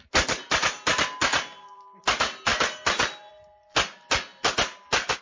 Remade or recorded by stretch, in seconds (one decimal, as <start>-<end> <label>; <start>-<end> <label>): 0.0-5.2 recorded